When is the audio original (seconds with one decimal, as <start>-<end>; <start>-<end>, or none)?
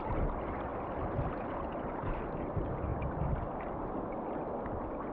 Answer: 0.0-5.1